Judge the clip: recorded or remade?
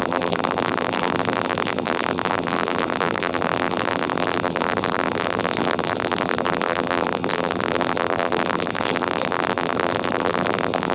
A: remade